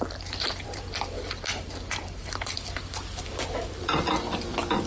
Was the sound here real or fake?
fake